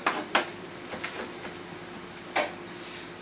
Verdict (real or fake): real